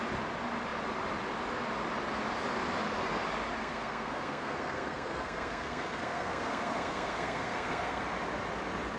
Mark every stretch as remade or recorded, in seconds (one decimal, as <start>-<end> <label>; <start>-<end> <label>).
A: 0.0-3.6 recorded; 3.6-8.0 remade; 8.0-9.0 recorded